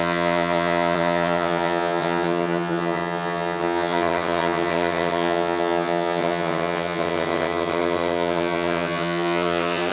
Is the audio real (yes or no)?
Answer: no